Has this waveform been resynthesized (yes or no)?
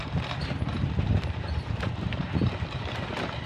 yes